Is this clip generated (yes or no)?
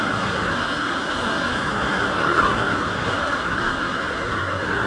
yes